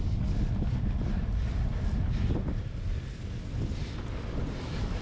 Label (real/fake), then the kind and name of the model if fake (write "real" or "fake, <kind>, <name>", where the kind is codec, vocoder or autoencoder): real